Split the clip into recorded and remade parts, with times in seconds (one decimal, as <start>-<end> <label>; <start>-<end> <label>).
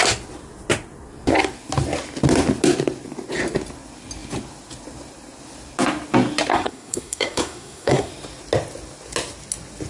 0.0-6.5 recorded; 6.5-8.1 remade; 8.1-9.9 recorded